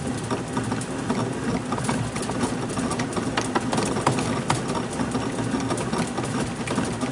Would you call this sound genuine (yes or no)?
yes